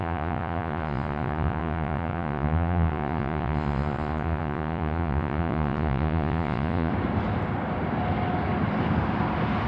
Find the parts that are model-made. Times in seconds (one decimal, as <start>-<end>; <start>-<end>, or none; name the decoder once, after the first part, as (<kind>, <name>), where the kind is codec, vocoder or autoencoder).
0.0-6.9 (vocoder, Vocos)